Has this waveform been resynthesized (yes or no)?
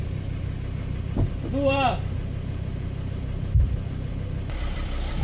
yes